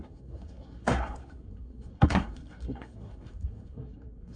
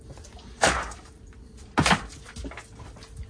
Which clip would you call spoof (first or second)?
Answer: first